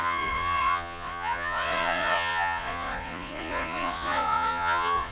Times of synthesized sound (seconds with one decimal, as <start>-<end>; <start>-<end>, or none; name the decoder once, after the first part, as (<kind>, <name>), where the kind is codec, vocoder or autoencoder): 0.0-5.1 (vocoder, Vocos)